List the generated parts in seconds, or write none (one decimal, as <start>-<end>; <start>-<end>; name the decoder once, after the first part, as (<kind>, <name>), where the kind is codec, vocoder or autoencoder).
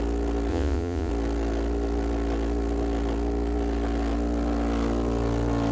0.5-1.1 (vocoder, Vocos)